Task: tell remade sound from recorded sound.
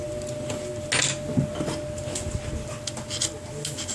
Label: recorded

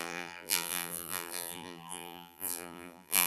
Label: remade